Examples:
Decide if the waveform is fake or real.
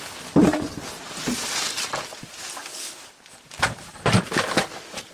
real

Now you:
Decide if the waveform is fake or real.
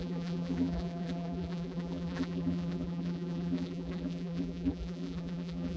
fake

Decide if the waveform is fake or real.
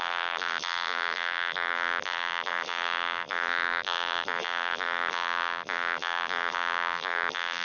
fake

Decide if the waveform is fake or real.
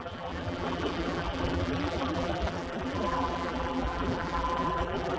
fake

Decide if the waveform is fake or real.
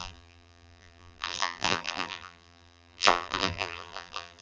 fake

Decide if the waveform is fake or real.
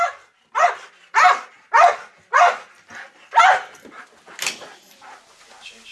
real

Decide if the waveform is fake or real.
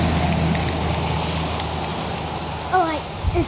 real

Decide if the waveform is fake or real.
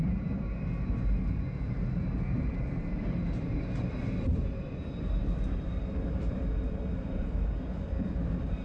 fake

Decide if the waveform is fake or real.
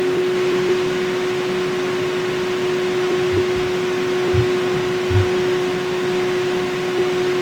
real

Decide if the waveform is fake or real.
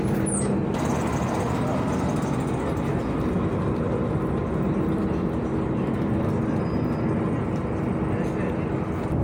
real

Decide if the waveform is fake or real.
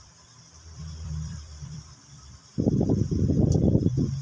fake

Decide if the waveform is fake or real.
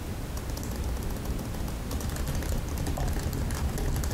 real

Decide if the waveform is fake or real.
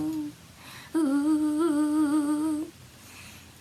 real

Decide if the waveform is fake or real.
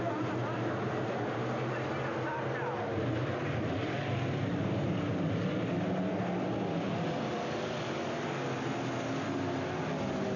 real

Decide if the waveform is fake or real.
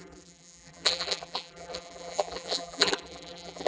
fake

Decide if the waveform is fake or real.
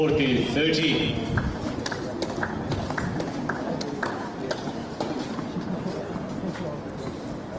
real